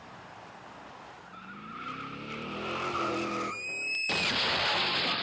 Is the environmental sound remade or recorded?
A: recorded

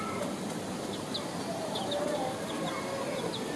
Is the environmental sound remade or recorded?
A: recorded